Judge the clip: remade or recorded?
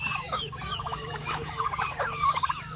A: remade